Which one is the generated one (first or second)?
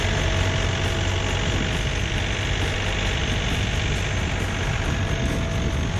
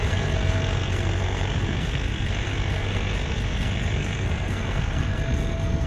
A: second